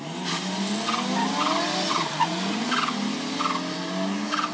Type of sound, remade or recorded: recorded